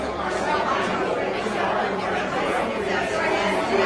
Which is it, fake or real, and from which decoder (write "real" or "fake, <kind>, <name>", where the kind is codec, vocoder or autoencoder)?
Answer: fake, vocoder, Vocos